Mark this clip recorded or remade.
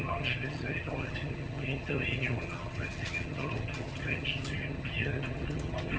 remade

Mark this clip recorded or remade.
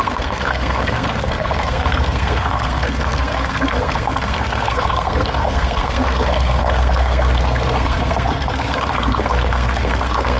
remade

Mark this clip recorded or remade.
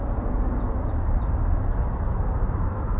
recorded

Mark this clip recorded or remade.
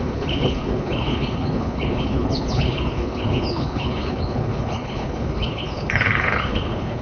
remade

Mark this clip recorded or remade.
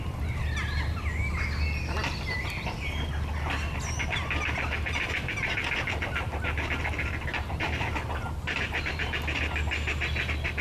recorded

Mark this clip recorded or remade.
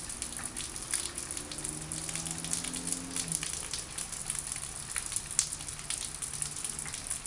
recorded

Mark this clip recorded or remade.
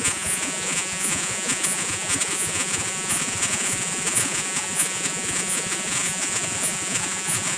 remade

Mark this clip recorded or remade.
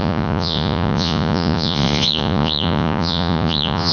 remade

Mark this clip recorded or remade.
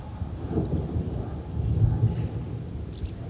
recorded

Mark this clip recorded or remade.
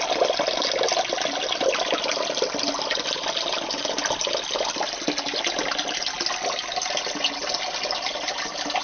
recorded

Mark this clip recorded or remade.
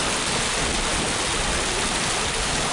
recorded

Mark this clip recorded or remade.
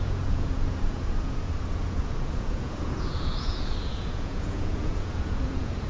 remade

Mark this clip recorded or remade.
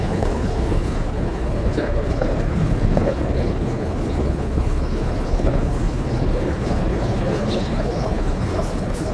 remade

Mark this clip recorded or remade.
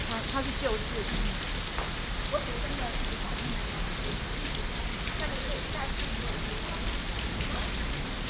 recorded